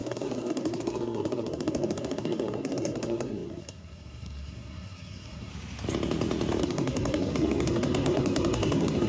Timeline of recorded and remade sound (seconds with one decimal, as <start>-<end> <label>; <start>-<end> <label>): 0.0-5.5 remade; 5.5-6.6 recorded; 6.6-9.1 remade